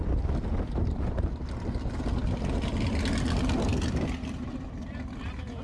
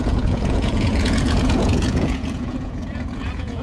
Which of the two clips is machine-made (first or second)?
second